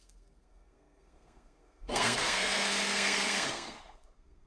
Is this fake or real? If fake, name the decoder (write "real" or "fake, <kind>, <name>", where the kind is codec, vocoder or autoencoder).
fake, codec, SNAC